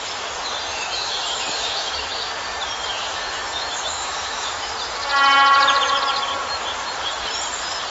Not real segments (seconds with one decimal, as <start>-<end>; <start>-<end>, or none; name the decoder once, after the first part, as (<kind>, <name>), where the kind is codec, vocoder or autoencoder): 0.7-2.3 (autoencoder, DAC-VAE); 2.9-4.7